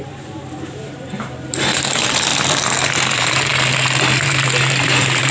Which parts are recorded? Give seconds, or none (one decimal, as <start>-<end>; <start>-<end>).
2.3-2.9; 3.5-4.2